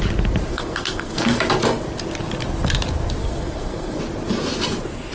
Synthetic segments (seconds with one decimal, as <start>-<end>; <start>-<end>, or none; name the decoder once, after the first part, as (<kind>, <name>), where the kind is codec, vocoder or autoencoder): 0.5-1.4 (codec, SNAC); 3.2-4.0